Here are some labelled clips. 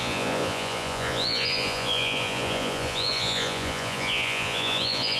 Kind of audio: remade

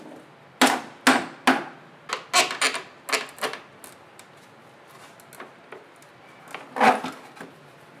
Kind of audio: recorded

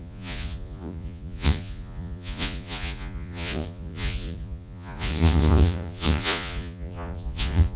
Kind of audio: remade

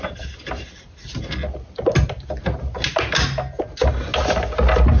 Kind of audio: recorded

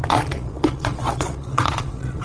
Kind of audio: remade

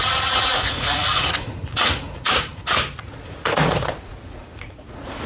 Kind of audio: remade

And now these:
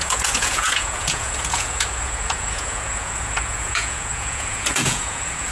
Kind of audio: remade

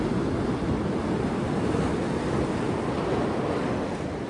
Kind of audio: recorded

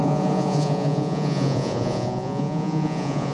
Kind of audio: remade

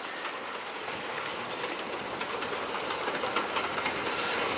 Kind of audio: recorded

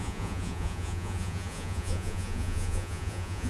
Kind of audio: remade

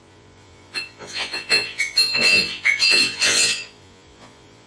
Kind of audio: remade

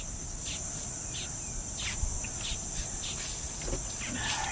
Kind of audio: recorded